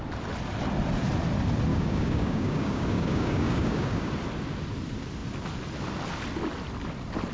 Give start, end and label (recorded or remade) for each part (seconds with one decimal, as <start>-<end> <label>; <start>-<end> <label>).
0.0-1.7 recorded; 1.7-4.1 remade; 4.1-7.3 recorded